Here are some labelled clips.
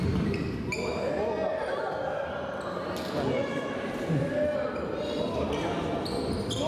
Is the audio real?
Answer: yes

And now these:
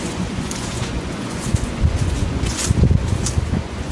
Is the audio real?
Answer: no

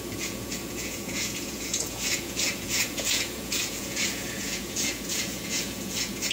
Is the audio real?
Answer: no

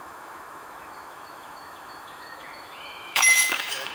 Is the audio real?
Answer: no